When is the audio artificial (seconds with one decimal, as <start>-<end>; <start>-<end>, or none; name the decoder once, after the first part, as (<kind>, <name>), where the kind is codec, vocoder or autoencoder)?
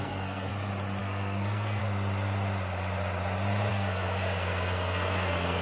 0.0-0.5 (codec, SNAC); 1.0-1.8; 3.7-5.6